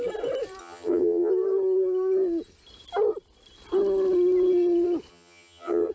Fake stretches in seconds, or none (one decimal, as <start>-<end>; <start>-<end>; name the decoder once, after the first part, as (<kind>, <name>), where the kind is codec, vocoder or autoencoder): 0.6-1.3 (vocoder, HiFi-GAN); 5.1-5.9